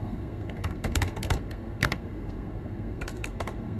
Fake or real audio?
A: fake